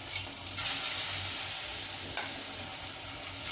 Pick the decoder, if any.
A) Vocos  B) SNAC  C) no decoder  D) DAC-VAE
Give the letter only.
C